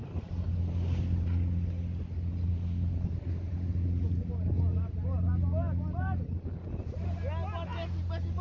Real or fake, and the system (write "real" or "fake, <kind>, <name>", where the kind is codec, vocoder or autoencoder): real